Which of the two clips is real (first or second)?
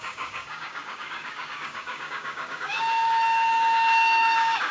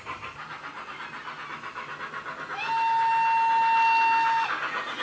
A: second